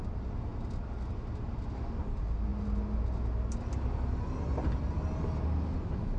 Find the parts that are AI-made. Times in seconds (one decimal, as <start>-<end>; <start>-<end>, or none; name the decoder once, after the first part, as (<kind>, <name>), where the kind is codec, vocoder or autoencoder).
none